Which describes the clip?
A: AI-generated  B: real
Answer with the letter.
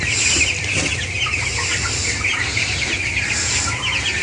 B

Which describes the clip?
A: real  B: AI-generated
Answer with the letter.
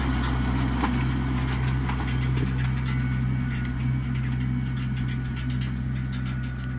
A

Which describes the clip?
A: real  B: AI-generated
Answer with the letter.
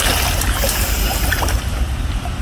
B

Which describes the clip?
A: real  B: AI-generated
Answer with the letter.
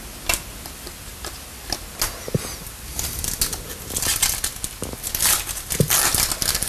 A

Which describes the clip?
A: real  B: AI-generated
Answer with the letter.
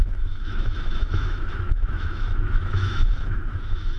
B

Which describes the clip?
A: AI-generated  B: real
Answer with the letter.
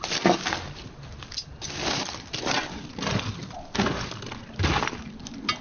B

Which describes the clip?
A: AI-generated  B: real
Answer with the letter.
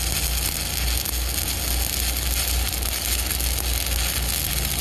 B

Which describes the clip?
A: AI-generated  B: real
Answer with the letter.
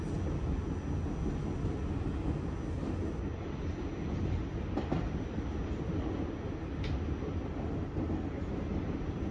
B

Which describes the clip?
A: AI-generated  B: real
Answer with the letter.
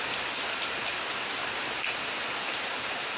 B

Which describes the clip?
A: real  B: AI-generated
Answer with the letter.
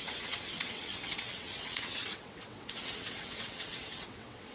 B